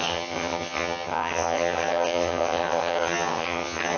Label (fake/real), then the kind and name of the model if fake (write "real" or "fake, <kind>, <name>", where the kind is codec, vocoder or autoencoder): fake, vocoder, HiFi-GAN